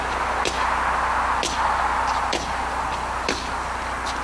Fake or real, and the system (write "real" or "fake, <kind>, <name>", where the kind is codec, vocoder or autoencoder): real